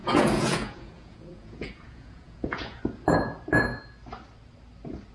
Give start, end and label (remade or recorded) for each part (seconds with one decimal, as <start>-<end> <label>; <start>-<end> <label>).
0.0-2.8 remade; 2.8-5.1 recorded